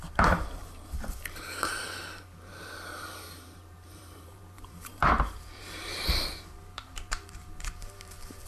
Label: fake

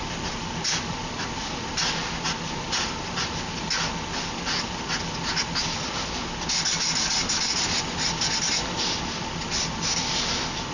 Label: real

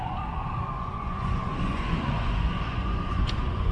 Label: fake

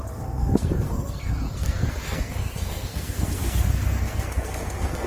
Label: fake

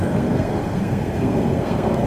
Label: fake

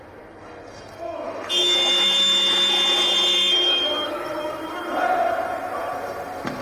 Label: fake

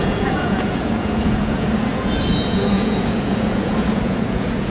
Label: fake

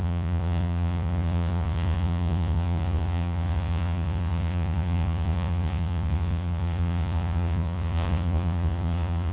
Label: fake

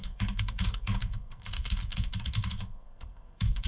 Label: fake